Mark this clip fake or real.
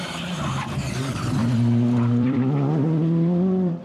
fake